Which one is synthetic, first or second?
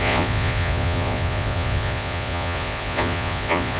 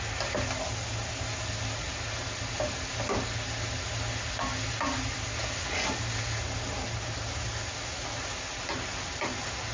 first